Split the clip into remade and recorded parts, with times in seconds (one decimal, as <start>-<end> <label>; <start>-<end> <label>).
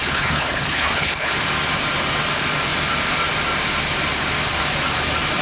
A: 0.0-1.3 remade; 1.3-5.4 recorded